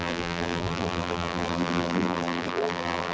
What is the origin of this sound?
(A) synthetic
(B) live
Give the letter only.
A